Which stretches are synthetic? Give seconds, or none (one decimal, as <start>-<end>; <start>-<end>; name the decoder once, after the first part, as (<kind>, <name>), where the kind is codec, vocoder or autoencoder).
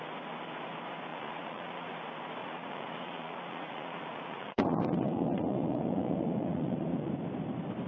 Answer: 1.1-1.9 (vocoder, Vocos); 2.4-7.1